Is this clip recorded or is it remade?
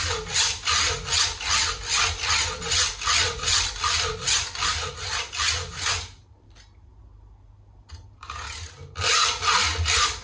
recorded